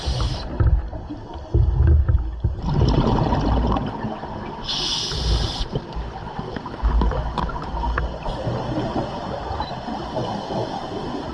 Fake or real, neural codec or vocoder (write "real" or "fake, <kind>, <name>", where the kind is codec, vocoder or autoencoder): real